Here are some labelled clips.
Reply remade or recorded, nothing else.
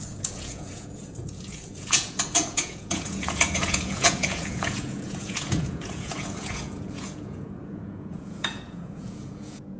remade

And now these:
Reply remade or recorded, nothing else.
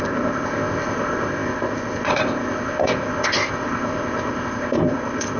remade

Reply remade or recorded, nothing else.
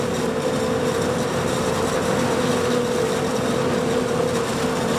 recorded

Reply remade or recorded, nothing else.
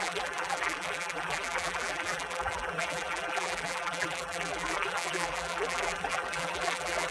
remade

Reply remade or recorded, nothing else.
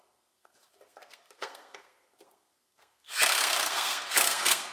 remade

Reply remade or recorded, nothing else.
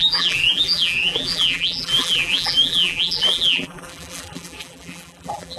remade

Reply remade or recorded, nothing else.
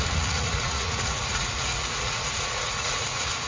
remade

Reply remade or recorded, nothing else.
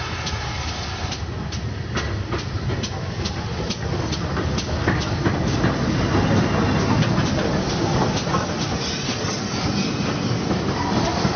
recorded